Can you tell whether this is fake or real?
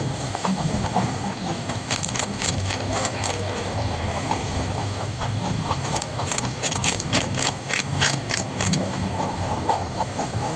fake